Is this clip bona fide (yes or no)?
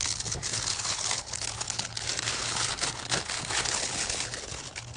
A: no